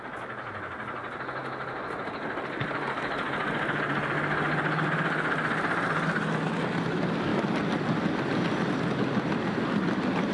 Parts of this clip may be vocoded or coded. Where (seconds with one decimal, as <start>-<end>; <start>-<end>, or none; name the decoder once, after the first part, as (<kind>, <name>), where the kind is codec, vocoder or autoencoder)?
none